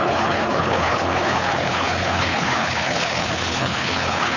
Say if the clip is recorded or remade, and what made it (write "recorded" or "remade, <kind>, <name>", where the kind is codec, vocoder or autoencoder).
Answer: remade, codec, HILCodec